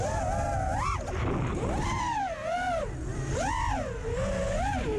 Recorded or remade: recorded